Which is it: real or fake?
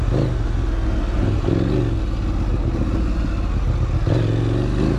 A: real